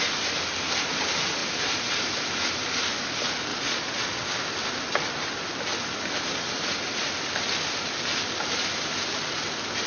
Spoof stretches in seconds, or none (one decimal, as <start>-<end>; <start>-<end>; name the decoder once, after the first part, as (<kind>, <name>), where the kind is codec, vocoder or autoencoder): 3.5-4.3 (vocoder, Vocos)